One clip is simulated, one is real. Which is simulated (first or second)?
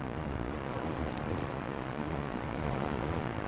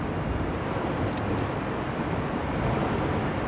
first